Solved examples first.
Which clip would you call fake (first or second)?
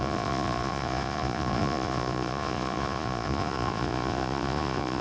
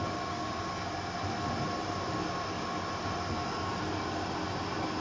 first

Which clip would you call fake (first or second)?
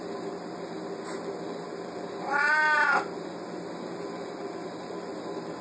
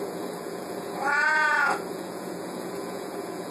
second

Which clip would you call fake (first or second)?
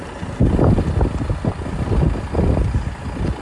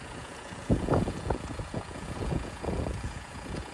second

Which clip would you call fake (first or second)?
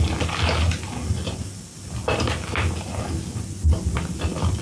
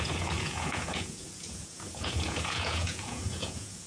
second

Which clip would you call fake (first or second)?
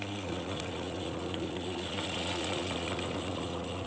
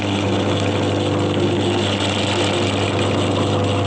first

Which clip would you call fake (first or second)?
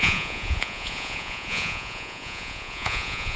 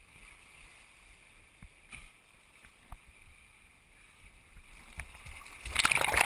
first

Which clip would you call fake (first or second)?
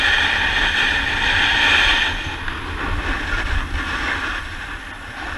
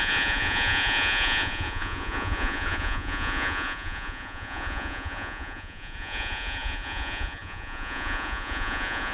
second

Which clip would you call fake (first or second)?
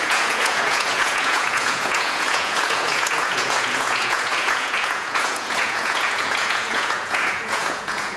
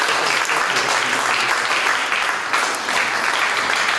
first